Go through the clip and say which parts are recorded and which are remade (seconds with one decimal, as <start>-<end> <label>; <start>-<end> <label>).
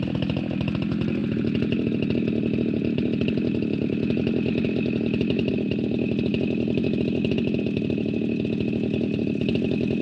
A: 0.0-10.0 recorded